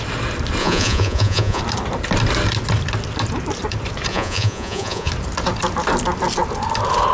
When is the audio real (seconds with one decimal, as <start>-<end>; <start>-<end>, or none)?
0.0-0.6; 1.6-4.1; 5.1-7.1